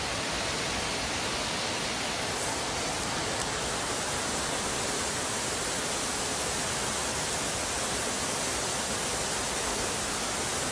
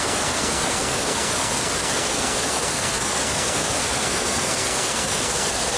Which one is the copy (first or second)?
second